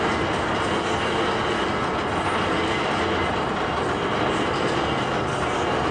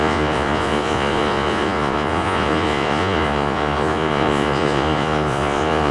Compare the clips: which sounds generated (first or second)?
second